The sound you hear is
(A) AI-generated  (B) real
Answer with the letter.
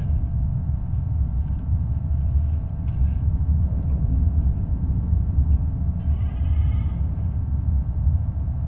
A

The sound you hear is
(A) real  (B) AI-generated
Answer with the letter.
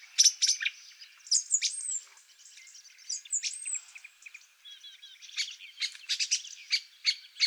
A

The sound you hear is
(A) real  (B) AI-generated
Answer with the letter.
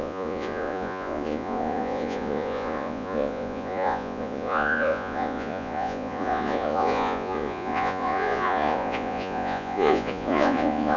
B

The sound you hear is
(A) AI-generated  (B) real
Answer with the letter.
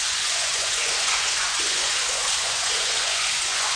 A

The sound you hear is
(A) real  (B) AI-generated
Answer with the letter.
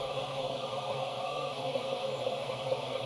B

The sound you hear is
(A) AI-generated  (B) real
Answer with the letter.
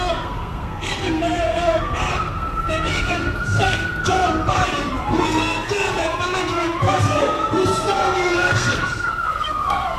A